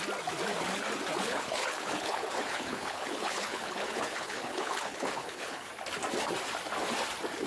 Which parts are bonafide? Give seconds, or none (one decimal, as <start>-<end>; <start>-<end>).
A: 0.0-1.2; 5.7-7.5